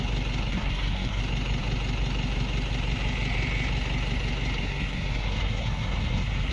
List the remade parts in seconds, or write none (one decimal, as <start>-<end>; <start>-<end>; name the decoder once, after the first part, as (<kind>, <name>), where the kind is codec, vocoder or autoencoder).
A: 0.5-1.2 (codec, SNAC); 4.6-6.5